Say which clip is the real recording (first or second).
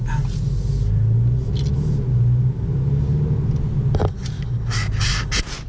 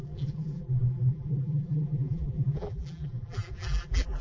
first